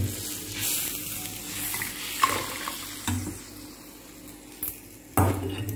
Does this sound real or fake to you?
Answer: real